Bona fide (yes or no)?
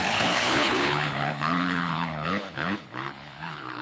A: no